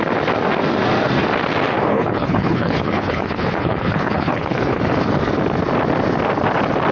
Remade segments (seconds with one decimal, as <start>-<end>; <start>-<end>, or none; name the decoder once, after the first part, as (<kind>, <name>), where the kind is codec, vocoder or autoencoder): 1.9-4.8 (codec, HILCodec)